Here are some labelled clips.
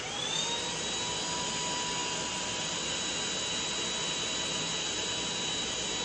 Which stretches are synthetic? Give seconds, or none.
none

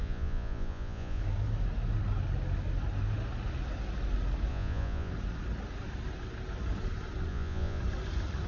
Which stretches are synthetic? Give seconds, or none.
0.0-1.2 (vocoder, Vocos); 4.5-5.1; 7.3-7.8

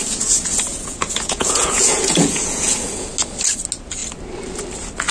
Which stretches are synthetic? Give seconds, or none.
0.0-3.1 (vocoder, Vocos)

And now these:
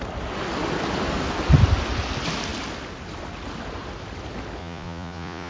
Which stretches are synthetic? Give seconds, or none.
4.6-5.5 (vocoder, Vocos)

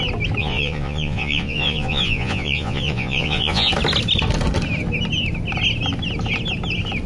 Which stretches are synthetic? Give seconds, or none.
0.4-3.7 (vocoder, Vocos)

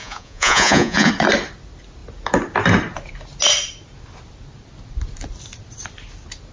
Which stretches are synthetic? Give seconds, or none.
0.0-1.1 (vocoder, Vocos)